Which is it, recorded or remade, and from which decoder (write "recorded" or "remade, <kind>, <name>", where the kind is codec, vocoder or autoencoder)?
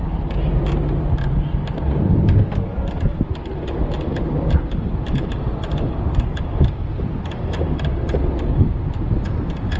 recorded